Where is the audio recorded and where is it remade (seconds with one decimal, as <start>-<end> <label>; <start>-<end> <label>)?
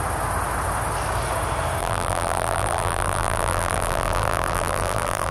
0.0-1.8 recorded; 1.8-5.3 remade